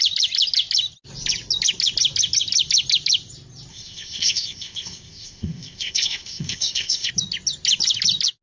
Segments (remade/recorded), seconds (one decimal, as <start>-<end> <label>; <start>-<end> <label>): 0.0-3.7 recorded; 3.7-7.1 remade; 7.1-8.4 recorded